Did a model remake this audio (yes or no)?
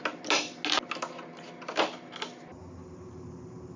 no